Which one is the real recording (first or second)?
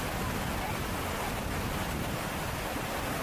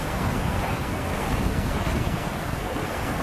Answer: first